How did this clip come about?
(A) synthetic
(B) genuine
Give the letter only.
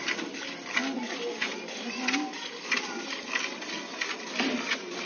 B